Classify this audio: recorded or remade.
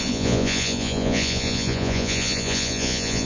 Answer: remade